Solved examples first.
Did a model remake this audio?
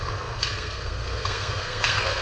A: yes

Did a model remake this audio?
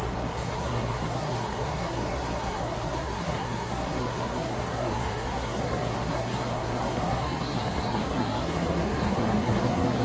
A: yes